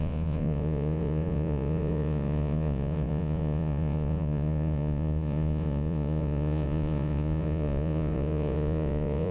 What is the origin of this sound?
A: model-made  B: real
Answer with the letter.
A